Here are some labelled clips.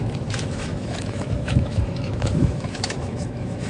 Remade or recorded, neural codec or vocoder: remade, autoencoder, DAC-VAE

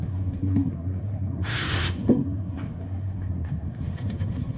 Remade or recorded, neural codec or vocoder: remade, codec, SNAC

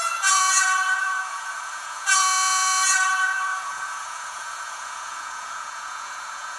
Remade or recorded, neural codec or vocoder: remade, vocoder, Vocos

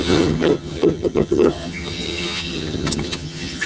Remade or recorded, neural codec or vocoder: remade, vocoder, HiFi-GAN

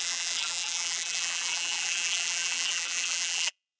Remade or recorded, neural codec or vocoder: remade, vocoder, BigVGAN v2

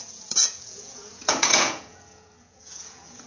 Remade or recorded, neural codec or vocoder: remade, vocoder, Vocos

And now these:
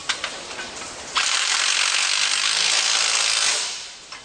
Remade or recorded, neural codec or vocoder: recorded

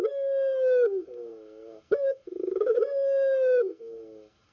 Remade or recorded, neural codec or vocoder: remade, codec, SNAC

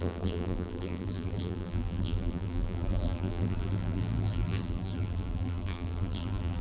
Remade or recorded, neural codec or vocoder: remade, vocoder, BigVGAN v2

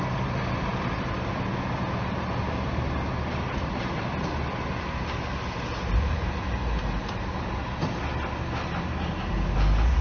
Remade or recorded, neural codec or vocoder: recorded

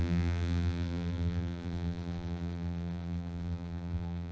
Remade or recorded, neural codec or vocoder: remade, vocoder, BigVGAN v2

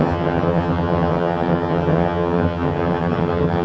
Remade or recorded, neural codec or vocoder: remade, vocoder, HiFi-GAN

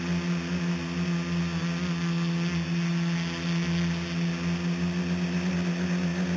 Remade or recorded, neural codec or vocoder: recorded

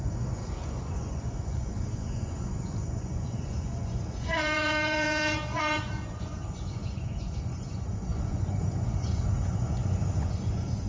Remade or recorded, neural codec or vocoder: remade, vocoder, Vocos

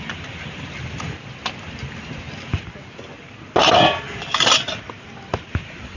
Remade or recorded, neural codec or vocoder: recorded